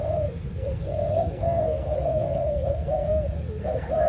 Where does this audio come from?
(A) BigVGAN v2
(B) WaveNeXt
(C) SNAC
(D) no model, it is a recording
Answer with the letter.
C